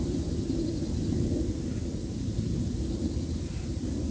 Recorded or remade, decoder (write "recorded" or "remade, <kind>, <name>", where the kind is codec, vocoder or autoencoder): recorded